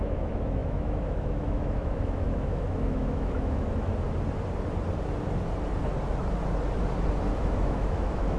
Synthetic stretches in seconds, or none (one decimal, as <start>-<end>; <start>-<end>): 0.0-3.9; 7.4-8.4